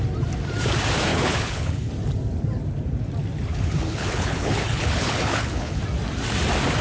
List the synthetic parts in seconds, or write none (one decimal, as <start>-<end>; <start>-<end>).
1.1-1.9; 3.5-5.8